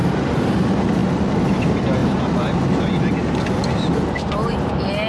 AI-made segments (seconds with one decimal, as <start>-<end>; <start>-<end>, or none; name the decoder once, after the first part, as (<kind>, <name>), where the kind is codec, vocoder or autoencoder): none